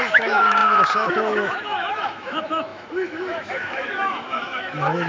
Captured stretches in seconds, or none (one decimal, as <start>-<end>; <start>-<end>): none